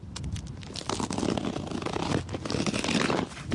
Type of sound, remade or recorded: recorded